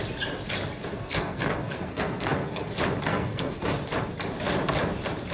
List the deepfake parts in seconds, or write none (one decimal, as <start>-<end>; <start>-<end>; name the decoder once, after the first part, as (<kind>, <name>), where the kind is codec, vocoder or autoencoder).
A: 0.9-2.7 (codec, SNAC); 3.1-3.7